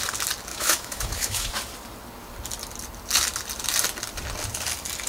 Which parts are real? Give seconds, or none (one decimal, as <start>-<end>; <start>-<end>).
0.0-0.5; 1.5-5.1